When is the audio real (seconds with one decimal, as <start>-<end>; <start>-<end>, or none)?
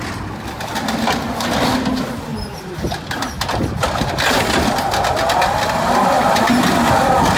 0.0-7.4